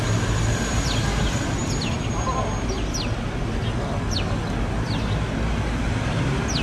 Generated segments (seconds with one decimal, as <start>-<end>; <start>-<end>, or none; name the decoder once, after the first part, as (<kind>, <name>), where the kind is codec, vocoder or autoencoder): none